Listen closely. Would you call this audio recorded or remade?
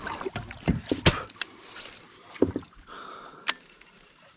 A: recorded